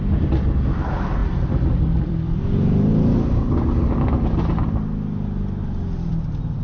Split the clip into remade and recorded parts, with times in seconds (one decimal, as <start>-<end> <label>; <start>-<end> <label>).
0.0-1.2 recorded; 1.2-2.4 remade; 2.4-2.9 recorded; 2.9-3.9 remade; 3.9-5.6 recorded; 5.6-6.6 remade